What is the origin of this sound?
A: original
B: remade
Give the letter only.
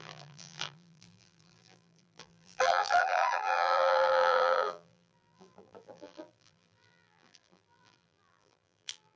B